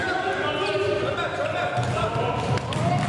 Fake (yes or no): no